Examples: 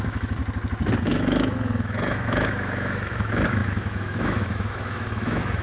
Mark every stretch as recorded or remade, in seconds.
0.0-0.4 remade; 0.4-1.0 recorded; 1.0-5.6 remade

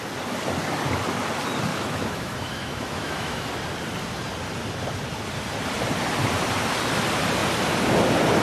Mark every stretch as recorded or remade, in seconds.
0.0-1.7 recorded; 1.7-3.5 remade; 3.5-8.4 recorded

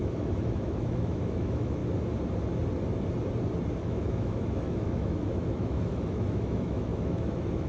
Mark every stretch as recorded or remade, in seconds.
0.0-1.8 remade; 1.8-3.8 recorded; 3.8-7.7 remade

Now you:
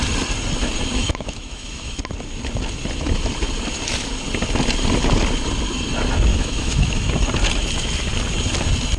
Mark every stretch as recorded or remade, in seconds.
0.0-1.0 recorded; 1.0-2.0 remade; 2.0-6.3 recorded; 6.3-7.1 remade; 7.1-9.0 recorded